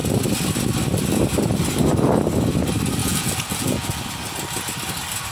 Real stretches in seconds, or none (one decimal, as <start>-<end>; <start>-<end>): 0.0-3.0; 4.0-5.3